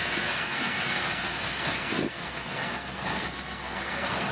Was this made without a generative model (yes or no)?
no